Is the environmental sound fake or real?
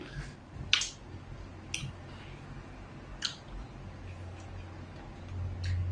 real